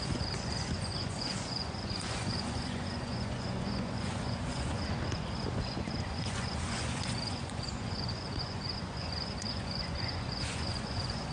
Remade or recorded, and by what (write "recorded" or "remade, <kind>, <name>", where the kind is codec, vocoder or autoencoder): remade, vocoder, Vocos